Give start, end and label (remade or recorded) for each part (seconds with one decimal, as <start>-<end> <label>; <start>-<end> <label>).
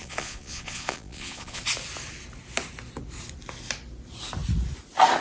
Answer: 0.0-1.6 remade; 1.6-5.2 recorded